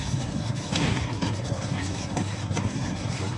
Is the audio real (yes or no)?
no